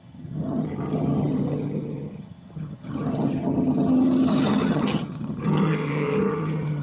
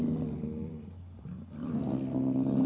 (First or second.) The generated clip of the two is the first